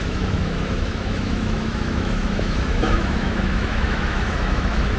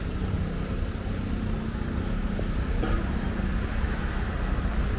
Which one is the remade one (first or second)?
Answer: first